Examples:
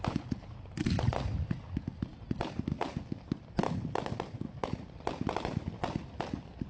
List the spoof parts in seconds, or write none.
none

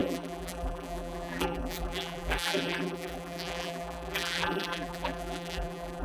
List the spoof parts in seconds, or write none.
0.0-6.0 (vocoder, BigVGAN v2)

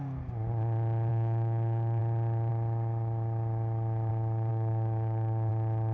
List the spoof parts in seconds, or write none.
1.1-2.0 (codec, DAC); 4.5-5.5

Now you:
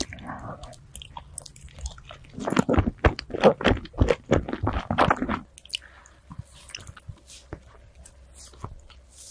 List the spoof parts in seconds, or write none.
none